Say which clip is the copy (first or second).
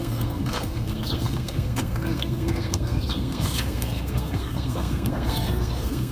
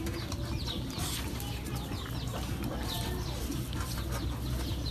first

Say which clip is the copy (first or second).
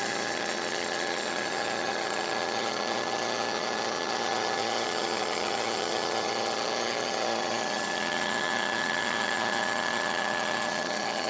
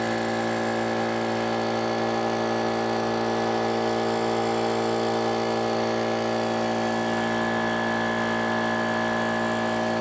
first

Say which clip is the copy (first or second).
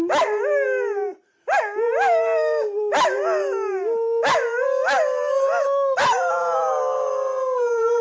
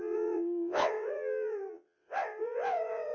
second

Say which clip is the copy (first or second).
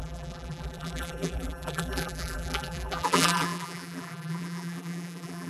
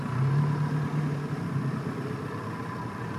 first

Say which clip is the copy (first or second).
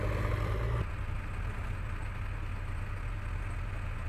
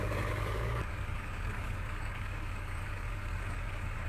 second